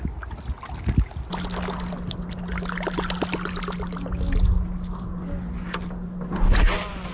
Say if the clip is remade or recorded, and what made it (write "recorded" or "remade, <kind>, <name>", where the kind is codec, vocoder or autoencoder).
recorded